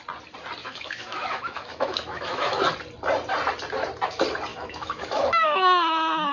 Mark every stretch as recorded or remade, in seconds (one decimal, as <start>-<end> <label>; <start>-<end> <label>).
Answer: 0.0-0.6 recorded; 0.6-2.6 remade; 2.6-4.5 recorded; 4.5-6.3 remade